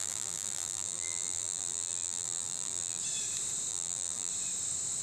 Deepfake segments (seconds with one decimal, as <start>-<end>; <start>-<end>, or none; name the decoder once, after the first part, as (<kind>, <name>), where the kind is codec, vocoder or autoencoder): 0.0-3.0 (vocoder, BigVGAN v2); 3.7-4.3